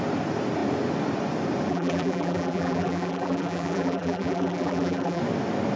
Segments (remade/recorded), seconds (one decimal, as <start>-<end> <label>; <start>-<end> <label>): 0.0-1.7 recorded; 1.7-5.2 remade; 5.2-5.8 recorded